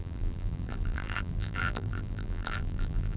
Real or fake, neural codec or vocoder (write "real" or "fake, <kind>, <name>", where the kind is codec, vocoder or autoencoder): fake, vocoder, BigVGAN v2